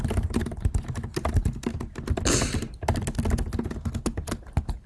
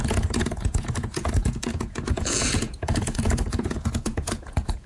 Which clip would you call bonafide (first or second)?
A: first